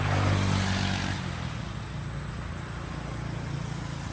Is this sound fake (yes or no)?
no